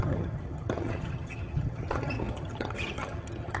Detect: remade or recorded remade